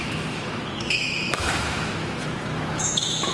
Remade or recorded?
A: remade